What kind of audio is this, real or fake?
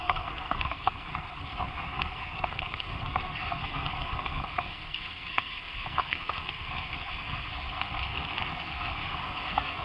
fake